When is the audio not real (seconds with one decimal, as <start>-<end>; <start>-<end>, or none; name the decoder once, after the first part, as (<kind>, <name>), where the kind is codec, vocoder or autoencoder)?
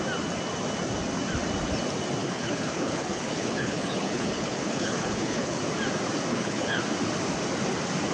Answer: 2.2-5.6 (codec, HILCodec); 6.3-6.8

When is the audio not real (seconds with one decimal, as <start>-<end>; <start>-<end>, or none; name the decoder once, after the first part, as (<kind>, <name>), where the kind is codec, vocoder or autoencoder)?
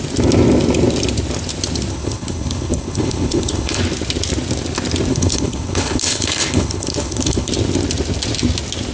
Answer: 1.9-3.8 (codec, HILCodec); 5.1-7.5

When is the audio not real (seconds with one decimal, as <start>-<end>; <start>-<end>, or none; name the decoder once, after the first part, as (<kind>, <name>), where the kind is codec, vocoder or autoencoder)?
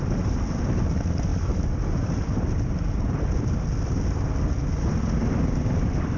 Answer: none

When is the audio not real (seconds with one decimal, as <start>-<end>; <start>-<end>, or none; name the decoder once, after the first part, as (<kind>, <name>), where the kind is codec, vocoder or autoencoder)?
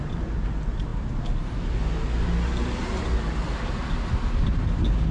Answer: none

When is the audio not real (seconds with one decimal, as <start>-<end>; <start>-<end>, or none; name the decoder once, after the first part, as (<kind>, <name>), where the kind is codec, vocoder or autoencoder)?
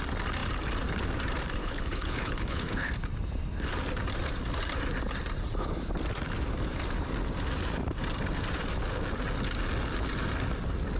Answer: 1.6-2.9 (codec, HILCodec)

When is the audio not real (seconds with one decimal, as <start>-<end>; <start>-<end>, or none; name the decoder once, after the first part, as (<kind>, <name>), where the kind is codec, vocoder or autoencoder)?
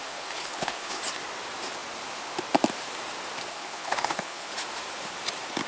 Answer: 0.0-1.0 (codec, HILCodec); 3.5-4.5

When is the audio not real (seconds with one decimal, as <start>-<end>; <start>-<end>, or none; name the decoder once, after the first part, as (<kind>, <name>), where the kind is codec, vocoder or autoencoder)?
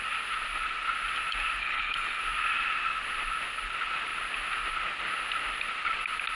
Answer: 1.6-2.2 (codec, HILCodec)